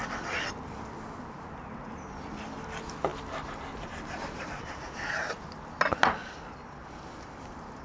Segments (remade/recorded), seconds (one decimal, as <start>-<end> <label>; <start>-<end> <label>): 0.0-7.8 recorded

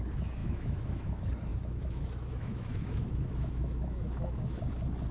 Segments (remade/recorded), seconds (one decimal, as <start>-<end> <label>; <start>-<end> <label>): 0.0-0.4 recorded; 0.4-1.1 remade; 1.1-1.5 recorded; 1.5-4.6 remade; 4.6-5.1 recorded

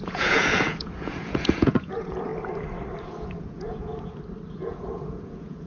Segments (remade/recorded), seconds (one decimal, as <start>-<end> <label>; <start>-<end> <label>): 0.0-2.3 remade; 2.3-3.0 recorded; 3.0-3.9 remade; 3.9-4.5 recorded; 4.5-5.7 remade

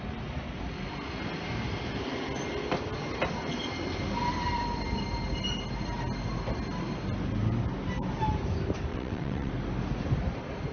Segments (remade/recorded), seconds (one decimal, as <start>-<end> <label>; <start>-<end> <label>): 0.0-8.9 recorded; 8.9-9.5 remade; 9.5-10.7 recorded

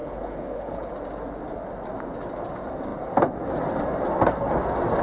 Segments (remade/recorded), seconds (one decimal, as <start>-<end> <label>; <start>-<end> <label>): 0.0-0.9 remade; 0.9-5.0 recorded

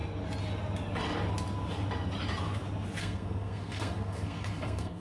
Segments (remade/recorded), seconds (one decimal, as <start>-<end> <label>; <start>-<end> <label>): 0.0-3.0 recorded; 3.0-5.0 remade

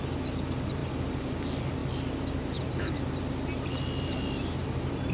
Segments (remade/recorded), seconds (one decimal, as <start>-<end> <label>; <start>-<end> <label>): 0.0-5.1 recorded